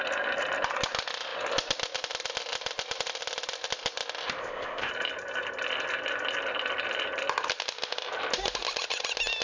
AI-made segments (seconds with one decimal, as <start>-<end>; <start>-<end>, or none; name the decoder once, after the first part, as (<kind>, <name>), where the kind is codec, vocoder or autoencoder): 4.4-4.9 (codec, ZipCodec)

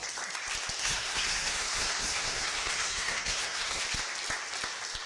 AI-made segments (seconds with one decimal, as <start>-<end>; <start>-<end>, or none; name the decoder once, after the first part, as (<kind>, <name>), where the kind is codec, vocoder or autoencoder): 0.8-3.8 (codec, SNAC)

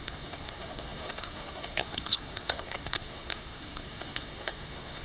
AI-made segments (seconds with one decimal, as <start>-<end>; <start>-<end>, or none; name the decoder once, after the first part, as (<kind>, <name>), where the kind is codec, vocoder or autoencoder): 0.0-5.0 (codec, SNAC)

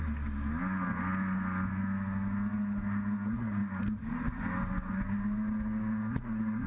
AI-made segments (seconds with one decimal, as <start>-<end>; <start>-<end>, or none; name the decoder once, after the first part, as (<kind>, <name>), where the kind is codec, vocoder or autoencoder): none

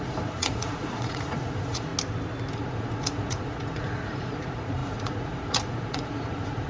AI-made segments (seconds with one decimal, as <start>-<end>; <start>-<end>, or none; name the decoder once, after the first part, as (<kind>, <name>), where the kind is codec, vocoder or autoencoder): 0.0-1.9 (vocoder, Vocos); 2.5-6.7

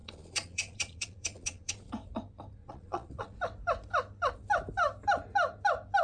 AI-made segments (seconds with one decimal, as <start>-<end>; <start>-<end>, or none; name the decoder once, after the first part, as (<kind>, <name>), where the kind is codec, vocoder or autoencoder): 0.0-1.9 (vocoder, Vocos); 2.6-3.4

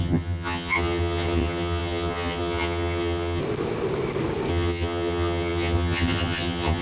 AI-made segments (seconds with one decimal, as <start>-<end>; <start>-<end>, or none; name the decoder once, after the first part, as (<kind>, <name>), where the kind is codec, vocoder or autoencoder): 0.0-3.4 (vocoder, HiFi-GAN); 4.5-6.8

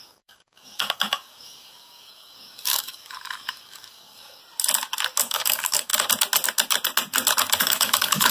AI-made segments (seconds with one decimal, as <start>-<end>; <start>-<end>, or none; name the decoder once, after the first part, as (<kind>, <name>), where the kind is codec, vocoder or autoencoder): 0.0-4.4 (codec, DAC); 5.2-5.9; 7.6-8.3